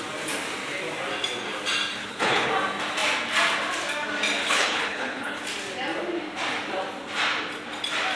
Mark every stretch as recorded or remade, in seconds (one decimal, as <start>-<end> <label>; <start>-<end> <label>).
0.0-2.0 recorded; 2.0-2.5 remade; 2.5-4.4 recorded; 4.4-5.4 remade; 5.4-8.2 recorded